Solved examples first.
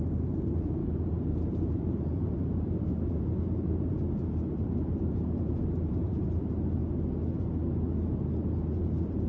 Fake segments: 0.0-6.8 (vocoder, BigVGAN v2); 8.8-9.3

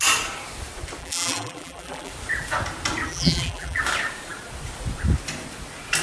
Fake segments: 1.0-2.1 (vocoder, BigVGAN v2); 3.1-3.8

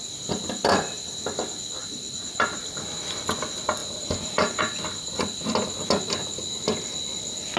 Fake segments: 1.8-2.6 (vocoder, BigVGAN v2); 3.8-4.6

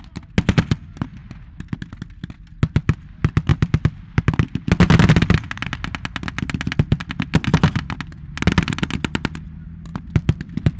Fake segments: 3.5-4.2 (vocoder, BigVGAN v2); 9.9-10.8

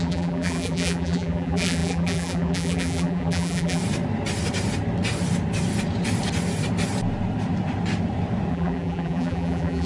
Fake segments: 0.0-3.8 (vocoder, BigVGAN v2); 8.5-9.9